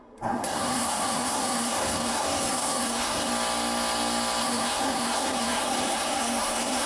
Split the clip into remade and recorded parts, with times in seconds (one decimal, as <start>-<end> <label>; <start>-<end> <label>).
0.0-3.3 remade; 3.3-4.4 recorded; 4.4-6.9 remade

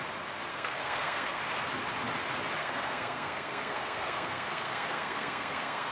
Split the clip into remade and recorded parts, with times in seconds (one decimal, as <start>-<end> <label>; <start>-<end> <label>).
0.0-0.5 recorded; 0.5-1.4 remade; 1.4-2.6 recorded; 2.6-5.9 remade

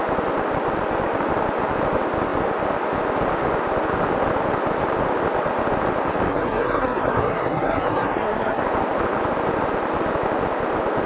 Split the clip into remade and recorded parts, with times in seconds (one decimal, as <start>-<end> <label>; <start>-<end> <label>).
0.0-6.3 recorded; 6.3-8.6 remade; 8.6-11.1 recorded

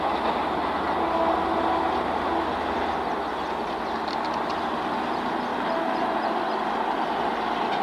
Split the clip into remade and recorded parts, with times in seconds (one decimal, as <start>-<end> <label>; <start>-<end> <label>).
0.0-7.8 recorded